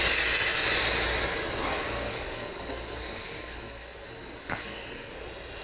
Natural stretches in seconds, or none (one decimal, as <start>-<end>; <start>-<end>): 0.0-1.7; 5.1-5.6